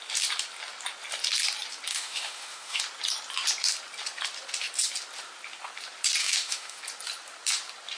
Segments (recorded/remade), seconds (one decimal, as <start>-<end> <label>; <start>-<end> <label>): 0.0-1.9 recorded; 1.9-2.8 remade; 2.8-6.2 recorded; 6.2-6.8 remade; 6.8-8.0 recorded